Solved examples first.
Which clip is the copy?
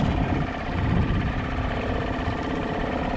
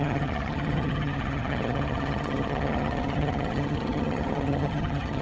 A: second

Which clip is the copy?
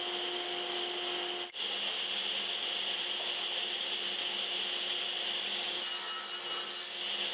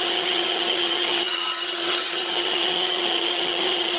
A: second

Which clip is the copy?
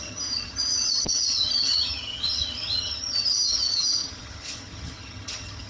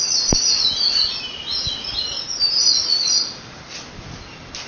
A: first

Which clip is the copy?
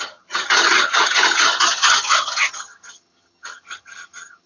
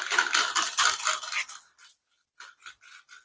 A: first